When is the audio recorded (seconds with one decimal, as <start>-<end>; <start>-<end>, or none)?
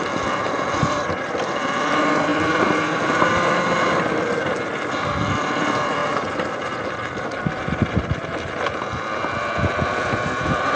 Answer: 0.0-10.8